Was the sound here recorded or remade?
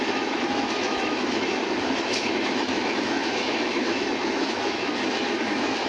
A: remade